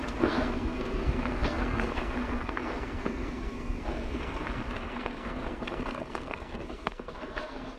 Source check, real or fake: fake